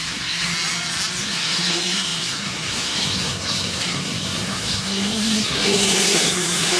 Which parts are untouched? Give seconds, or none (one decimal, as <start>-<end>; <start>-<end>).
0.5-1.2